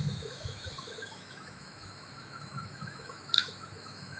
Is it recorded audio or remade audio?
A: remade